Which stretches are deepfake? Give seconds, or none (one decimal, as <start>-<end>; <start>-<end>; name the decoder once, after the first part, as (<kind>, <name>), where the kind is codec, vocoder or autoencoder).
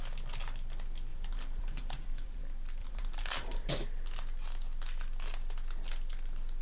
1.1-2.4 (vocoder, BigVGAN v2); 2.8-3.8